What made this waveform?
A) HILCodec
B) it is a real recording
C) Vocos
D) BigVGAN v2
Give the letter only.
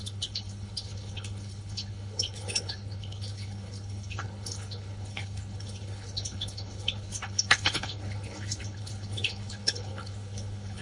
A